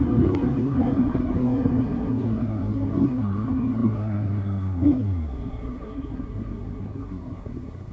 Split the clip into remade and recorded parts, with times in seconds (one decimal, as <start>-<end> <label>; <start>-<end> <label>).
0.0-7.9 remade